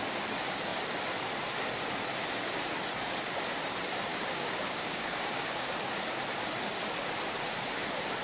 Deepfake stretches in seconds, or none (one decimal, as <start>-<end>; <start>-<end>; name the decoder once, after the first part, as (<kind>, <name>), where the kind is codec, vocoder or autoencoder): 4.1-5.7 (codec, DAC)